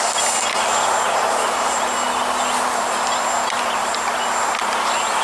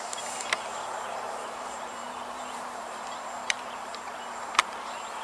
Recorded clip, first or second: first